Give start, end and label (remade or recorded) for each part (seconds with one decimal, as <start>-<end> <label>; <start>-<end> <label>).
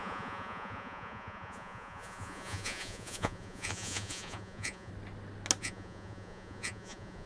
0.0-4.9 remade; 4.9-5.6 recorded; 5.6-7.3 remade